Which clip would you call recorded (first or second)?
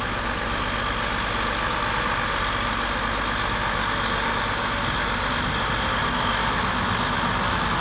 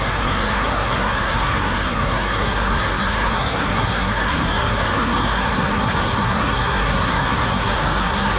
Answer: first